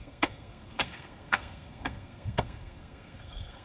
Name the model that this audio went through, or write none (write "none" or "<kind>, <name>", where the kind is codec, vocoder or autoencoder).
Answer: codec, SNAC